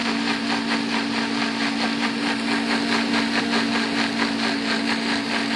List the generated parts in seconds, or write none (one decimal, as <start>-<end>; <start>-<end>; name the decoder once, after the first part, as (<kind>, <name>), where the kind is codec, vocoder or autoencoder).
none

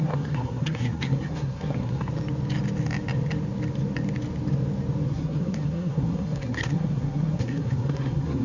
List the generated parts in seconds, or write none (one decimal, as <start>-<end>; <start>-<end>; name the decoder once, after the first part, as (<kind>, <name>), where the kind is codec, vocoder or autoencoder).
0.0-2.1 (codec, SNAC); 5.1-8.4